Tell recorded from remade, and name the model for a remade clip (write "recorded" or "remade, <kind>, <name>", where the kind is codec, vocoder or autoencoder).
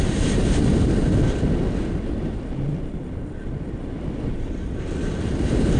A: remade, vocoder, BigVGAN v2